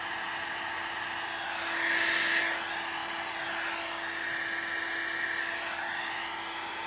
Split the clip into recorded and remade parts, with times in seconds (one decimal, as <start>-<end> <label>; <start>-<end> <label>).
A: 0.0-6.9 recorded